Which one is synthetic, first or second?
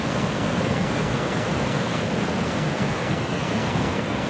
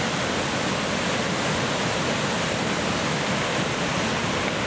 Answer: first